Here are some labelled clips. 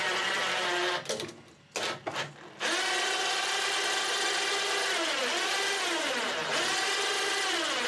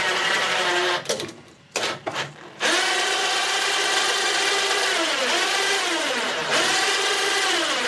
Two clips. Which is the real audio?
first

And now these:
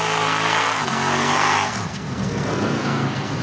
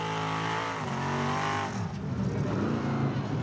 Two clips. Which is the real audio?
second